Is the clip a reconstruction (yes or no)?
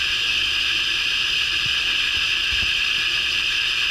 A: no